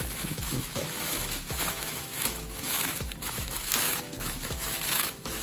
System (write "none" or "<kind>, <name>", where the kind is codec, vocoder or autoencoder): autoencoder, DAC-VAE